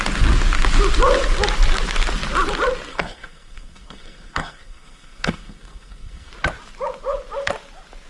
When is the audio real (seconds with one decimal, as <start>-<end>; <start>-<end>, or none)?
0.0-2.9; 6.3-8.1